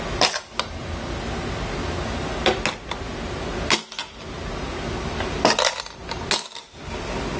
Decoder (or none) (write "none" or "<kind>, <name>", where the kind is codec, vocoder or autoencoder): none